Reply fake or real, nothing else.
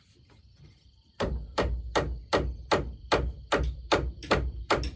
real